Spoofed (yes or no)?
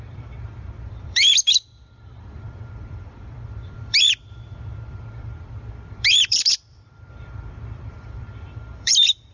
yes